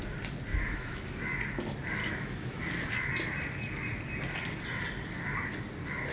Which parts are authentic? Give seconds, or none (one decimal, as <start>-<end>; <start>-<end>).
0.0-0.5; 1.0-2.0; 2.6-6.1